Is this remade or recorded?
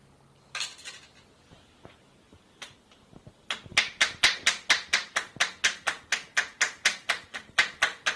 recorded